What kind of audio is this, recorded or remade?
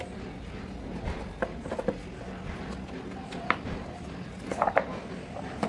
recorded